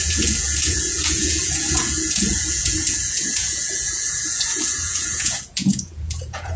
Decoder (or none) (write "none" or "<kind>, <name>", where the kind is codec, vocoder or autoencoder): vocoder, Vocos